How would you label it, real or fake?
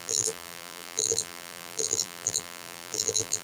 fake